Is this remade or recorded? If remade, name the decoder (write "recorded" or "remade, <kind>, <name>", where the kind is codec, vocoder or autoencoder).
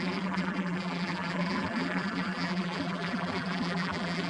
remade, vocoder, BigVGAN v2